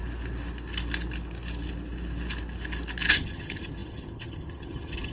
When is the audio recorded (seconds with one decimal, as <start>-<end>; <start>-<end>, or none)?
0.0-3.1